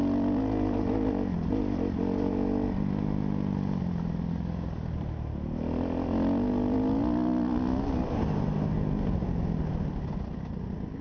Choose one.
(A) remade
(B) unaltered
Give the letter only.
B